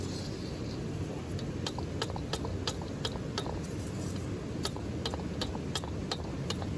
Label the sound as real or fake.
real